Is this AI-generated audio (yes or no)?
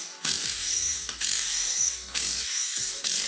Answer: yes